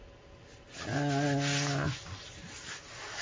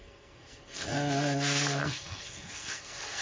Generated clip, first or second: second